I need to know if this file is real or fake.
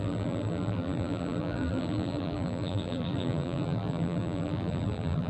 fake